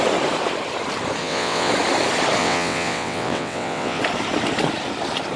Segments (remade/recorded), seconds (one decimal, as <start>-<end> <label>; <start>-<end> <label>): 0.0-1.2 recorded; 1.2-1.7 remade; 1.7-2.4 recorded; 2.4-4.0 remade; 4.0-5.4 recorded